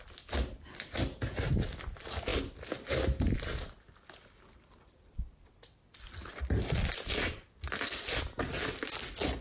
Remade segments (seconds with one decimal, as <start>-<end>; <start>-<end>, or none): none